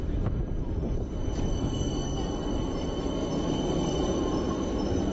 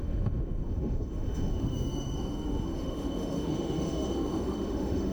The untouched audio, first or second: first